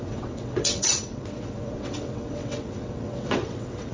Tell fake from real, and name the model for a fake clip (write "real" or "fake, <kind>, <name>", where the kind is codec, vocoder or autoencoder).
fake, vocoder, WaveNeXt